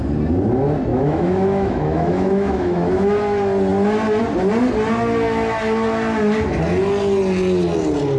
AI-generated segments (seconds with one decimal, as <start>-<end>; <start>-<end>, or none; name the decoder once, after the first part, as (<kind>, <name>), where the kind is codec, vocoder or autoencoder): 0.9-3.2 (autoencoder, DAC-VAE)